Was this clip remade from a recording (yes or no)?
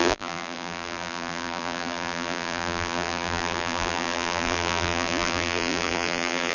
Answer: yes